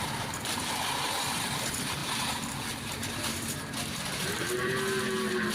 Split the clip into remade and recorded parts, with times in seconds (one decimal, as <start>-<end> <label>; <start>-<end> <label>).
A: 0.0-5.5 remade